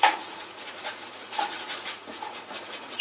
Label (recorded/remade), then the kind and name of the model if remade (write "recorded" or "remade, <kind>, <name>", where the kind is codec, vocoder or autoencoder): remade, vocoder, Vocos